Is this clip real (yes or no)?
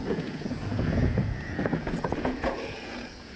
no